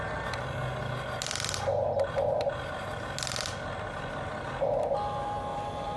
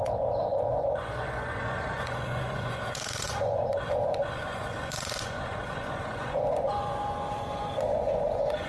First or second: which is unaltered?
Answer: first